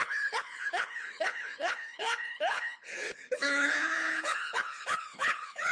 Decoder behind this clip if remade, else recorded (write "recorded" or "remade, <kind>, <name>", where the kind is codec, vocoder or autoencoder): remade, codec, HILCodec